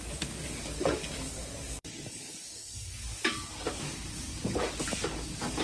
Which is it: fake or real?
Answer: fake